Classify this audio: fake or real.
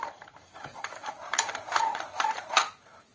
fake